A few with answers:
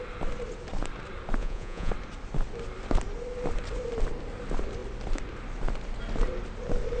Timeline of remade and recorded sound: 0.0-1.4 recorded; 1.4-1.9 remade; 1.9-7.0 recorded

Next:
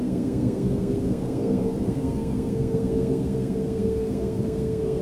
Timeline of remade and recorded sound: 0.0-5.0 remade

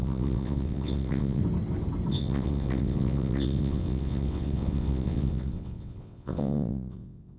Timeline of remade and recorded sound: 0.0-1.4 remade; 1.4-2.1 recorded; 2.1-7.4 remade